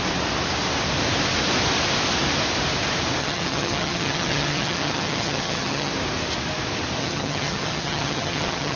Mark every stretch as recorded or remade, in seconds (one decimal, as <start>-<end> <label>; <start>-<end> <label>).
0.0-3.2 recorded; 3.2-5.9 remade; 5.9-7.0 recorded; 7.0-8.8 remade